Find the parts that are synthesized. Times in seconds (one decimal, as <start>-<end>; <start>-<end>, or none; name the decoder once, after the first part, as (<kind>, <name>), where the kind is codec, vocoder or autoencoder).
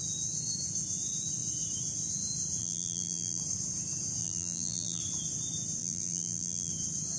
2.6-3.4 (vocoder, BigVGAN v2); 4.2-5.0; 5.8-6.7